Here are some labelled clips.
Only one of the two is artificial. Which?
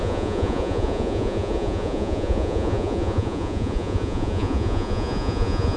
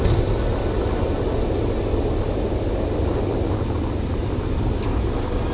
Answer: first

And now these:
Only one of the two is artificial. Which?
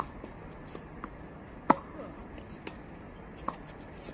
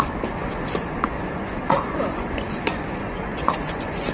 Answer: second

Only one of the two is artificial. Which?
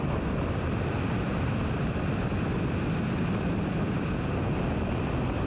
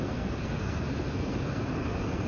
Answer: second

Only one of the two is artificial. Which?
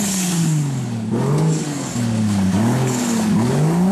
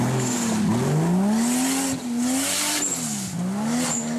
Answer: first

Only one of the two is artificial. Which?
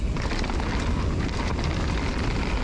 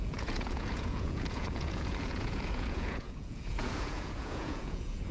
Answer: second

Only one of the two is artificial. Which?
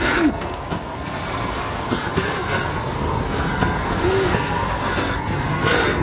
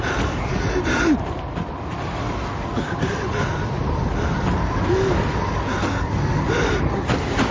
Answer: first